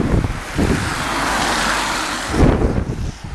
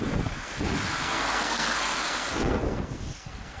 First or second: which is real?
first